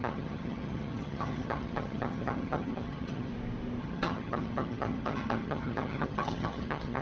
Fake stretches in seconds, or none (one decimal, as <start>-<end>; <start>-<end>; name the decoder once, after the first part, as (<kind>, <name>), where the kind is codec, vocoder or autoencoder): 0.0-3.3 (vocoder, HiFi-GAN); 3.8-7.0